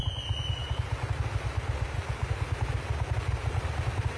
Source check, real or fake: real